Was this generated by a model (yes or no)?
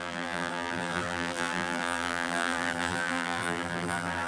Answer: yes